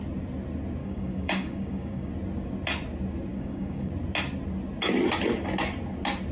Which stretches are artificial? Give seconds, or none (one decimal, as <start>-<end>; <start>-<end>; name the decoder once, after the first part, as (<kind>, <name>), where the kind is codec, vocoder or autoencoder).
0.8-2.1 (codec, DAC); 3.3-3.9